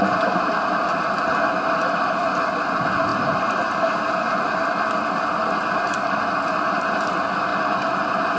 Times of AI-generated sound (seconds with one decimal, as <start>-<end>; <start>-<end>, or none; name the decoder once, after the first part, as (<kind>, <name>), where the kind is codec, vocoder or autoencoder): none